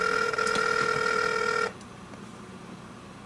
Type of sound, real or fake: real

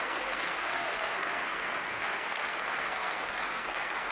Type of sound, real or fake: fake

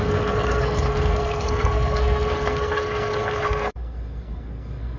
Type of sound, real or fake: fake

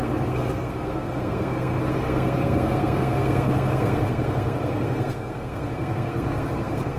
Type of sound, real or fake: fake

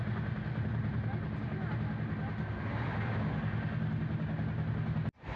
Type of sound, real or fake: real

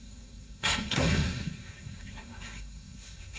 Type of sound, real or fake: fake